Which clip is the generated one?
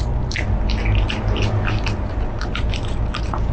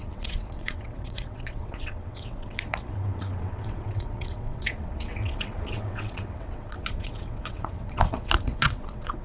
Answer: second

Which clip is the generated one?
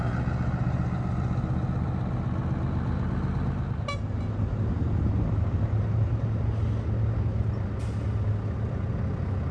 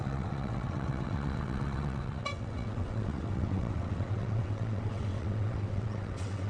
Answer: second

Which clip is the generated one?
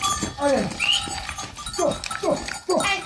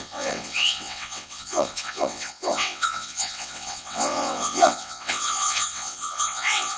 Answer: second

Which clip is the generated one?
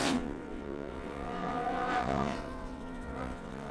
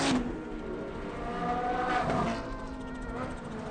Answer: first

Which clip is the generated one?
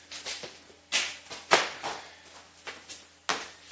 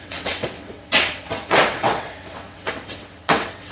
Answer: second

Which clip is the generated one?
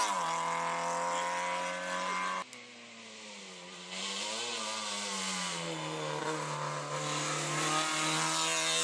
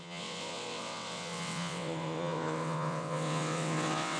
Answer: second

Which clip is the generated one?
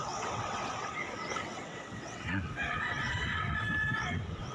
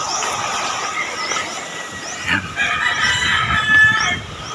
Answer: first